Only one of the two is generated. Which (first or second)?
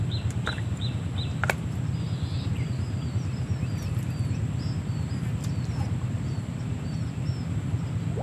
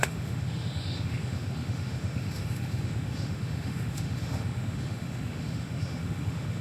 second